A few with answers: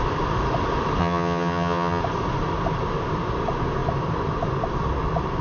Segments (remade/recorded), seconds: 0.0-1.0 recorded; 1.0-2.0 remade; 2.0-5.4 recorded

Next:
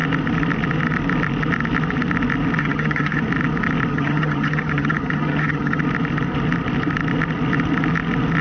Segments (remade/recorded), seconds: 0.0-2.6 recorded; 2.6-3.2 remade; 3.2-3.9 recorded; 3.9-5.8 remade; 5.8-8.4 recorded

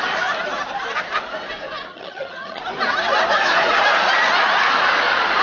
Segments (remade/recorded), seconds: 0.0-1.9 recorded; 1.9-2.6 remade; 2.6-5.4 recorded

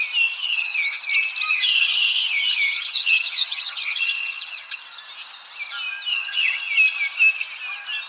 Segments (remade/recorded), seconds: 0.0-0.4 recorded; 0.4-1.0 remade; 1.0-1.5 recorded; 1.5-4.8 remade; 4.8-6.1 recorded; 6.1-6.6 remade; 6.6-8.1 recorded

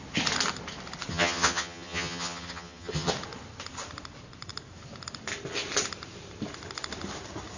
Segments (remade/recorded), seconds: 0.0-1.1 recorded; 1.1-3.1 remade; 3.1-7.6 recorded

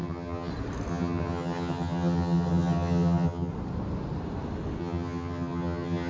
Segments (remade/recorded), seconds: 0.0-0.5 remade; 0.5-0.9 recorded; 0.9-3.5 remade; 3.5-4.8 recorded; 4.8-6.1 remade

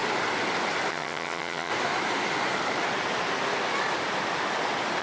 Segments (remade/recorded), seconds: 0.0-0.9 recorded; 0.9-1.7 remade; 1.7-5.0 recorded